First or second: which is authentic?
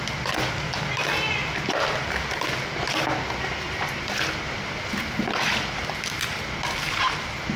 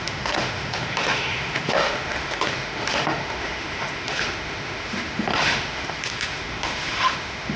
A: first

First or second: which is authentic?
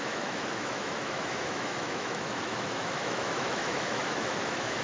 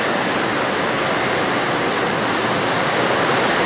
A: second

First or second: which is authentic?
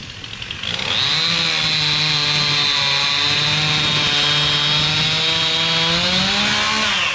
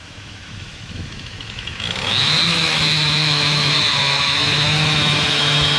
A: first